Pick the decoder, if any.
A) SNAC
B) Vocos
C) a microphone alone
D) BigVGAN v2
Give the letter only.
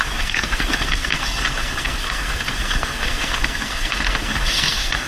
A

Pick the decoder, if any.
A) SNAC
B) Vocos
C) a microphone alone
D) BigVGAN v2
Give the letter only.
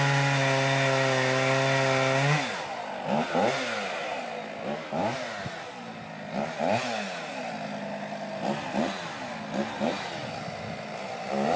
C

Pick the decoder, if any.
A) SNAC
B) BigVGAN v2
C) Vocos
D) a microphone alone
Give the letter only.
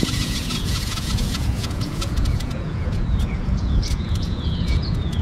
C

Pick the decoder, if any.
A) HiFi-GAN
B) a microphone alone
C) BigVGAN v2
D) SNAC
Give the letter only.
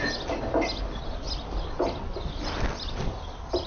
B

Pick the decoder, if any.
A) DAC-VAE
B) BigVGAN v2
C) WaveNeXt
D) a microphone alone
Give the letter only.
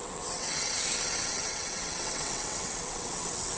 C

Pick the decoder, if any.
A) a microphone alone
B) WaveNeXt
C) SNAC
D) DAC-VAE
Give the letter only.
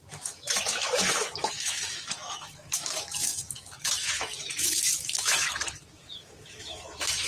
D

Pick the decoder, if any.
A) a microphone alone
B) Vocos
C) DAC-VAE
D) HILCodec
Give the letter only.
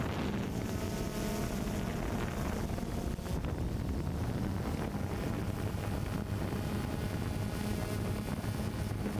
A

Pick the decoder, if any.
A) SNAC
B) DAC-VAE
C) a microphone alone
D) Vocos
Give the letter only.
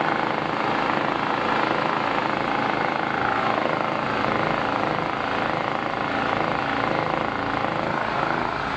C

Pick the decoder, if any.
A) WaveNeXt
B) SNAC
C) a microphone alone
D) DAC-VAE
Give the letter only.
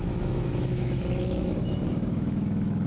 D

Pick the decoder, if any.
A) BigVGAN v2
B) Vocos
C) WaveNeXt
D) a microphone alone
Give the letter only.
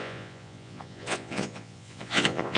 B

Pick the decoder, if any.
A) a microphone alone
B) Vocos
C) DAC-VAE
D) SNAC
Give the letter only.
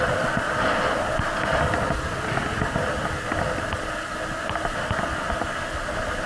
A